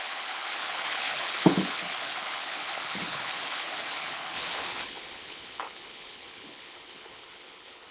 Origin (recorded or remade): remade